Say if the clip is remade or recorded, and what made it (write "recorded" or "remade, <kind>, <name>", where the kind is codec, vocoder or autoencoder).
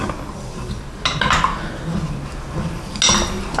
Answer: recorded